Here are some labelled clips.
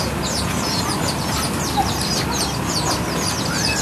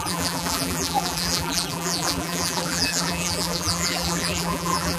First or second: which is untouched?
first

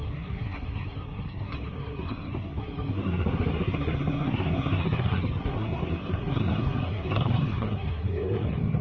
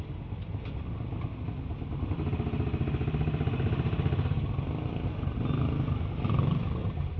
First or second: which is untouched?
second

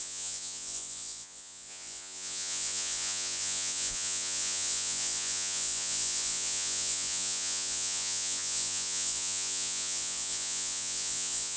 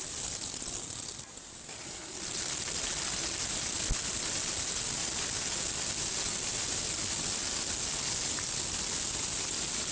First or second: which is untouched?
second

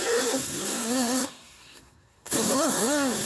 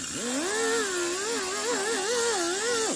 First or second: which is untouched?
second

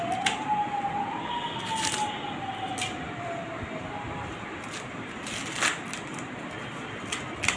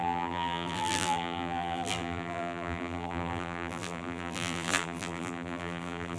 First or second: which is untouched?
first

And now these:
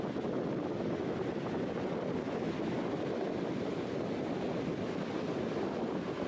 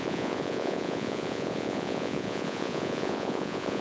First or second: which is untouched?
first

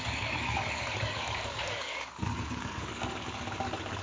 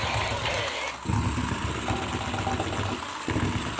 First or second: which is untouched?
second